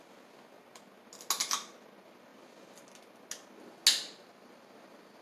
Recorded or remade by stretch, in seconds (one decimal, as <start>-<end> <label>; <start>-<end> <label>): 0.0-5.2 recorded